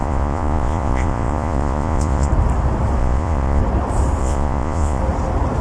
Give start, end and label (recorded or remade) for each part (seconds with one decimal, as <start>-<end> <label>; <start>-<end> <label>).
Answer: 0.0-2.3 remade; 2.3-3.0 recorded; 3.0-3.6 remade; 3.6-4.2 recorded; 4.2-5.0 remade; 5.0-5.6 recorded